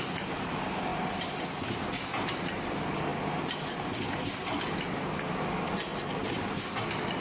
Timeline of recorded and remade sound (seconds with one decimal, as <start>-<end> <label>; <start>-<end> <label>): 0.0-7.2 recorded